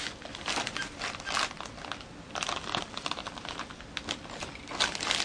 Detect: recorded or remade recorded